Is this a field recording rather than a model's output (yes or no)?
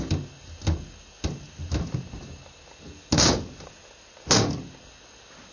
yes